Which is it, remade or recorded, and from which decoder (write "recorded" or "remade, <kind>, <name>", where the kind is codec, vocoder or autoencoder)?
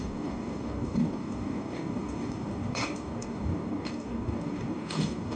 remade, codec, DAC